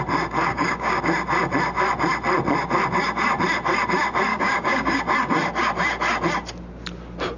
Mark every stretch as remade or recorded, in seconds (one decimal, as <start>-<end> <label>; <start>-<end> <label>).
0.0-0.5 recorded; 0.5-1.0 remade; 1.0-4.3 recorded; 4.3-5.0 remade; 5.0-7.4 recorded